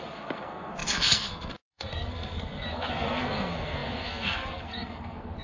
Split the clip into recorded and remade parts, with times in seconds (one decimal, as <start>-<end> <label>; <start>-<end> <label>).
0.0-5.4 remade

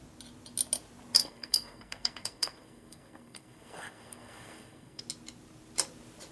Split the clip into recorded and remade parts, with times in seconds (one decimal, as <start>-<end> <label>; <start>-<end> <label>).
0.0-1.2 recorded; 1.2-5.0 remade; 5.0-6.3 recorded

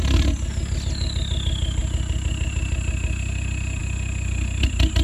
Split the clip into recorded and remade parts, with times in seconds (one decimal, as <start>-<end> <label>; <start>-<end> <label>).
0.0-5.0 recorded

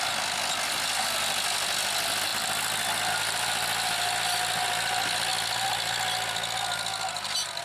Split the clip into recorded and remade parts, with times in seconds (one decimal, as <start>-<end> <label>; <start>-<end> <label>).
0.0-7.6 recorded

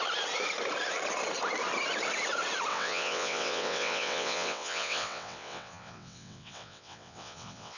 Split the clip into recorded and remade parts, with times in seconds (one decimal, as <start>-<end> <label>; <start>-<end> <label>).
0.0-2.7 recorded; 2.7-7.8 remade